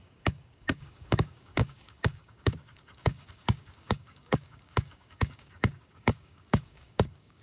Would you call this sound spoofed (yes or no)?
yes